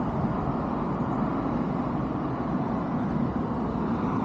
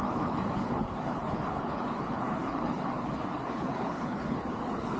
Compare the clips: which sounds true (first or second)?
first